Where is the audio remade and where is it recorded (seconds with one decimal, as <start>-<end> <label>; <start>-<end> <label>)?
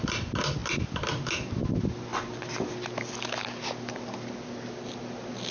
0.0-5.5 recorded